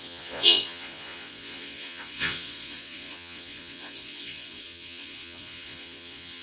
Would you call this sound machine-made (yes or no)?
yes